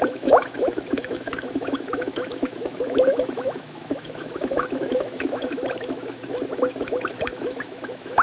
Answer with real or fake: fake